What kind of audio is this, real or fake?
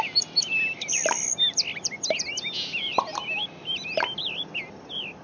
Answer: fake